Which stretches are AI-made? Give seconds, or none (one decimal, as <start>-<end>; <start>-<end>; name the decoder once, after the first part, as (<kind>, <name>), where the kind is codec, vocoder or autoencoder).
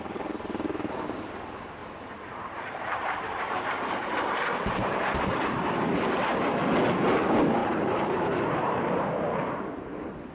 1.8-6.6 (vocoder, BigVGAN v2); 7.6-8.8